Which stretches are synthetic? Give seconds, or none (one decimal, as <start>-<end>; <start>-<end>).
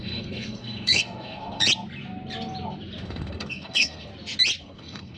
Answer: 0.0-1.6; 3.0-4.1; 4.6-5.2